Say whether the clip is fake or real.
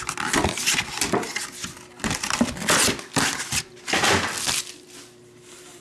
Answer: real